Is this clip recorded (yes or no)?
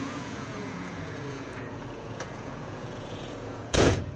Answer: no